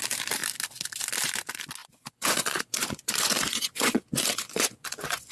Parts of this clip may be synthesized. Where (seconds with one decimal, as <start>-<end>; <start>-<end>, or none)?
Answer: 1.8-5.3